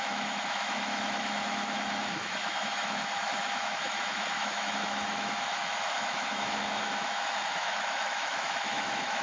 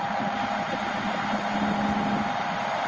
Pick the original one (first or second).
second